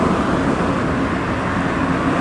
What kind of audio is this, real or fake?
real